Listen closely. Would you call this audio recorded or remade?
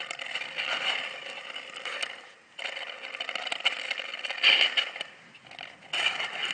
recorded